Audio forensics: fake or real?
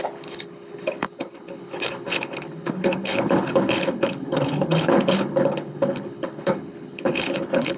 fake